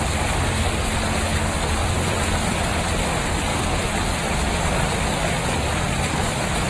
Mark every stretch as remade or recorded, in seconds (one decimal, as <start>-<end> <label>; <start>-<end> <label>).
0.0-1.8 recorded; 1.8-2.7 remade; 2.7-6.7 recorded